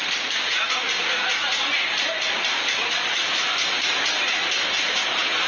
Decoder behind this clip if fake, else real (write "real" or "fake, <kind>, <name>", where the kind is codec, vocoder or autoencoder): real